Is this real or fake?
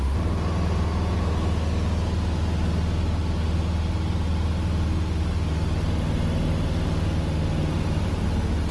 real